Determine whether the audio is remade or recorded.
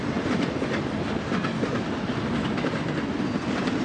recorded